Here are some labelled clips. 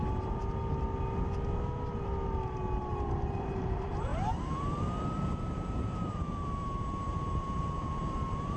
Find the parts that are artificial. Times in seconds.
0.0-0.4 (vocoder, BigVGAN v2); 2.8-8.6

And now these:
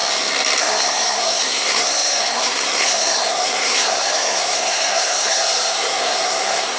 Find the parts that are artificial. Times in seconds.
0.6-6.8 (codec, SNAC)

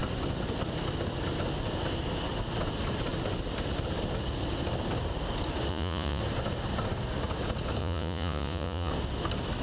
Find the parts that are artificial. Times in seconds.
5.7-6.2 (vocoder, Vocos); 7.8-8.9

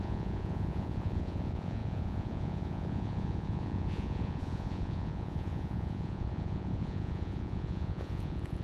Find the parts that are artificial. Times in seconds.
0.0-8.6 (vocoder, Vocos)

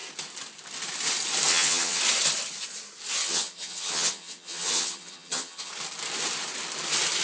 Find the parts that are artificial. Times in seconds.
1.5-2.0 (vocoder, HiFi-GAN); 3.2-5.7